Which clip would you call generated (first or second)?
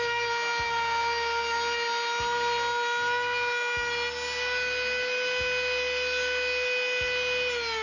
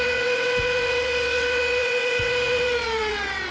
second